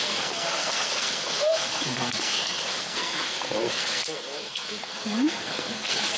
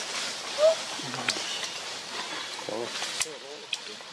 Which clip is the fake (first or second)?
first